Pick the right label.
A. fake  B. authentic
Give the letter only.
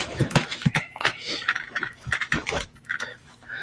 A